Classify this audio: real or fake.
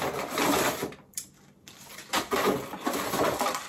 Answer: fake